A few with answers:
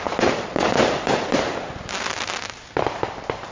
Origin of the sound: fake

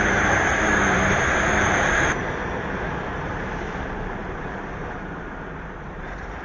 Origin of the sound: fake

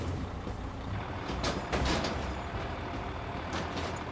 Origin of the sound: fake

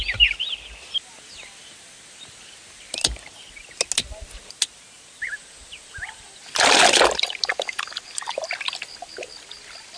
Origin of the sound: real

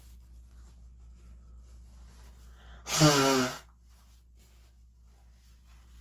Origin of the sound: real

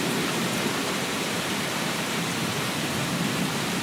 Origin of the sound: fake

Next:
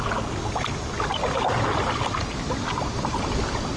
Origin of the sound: real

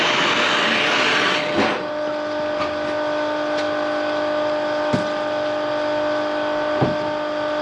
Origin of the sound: real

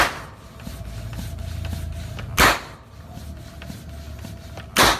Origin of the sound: real